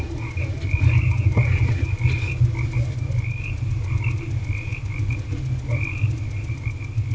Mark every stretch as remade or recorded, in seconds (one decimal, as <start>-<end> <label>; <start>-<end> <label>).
0.0-7.1 recorded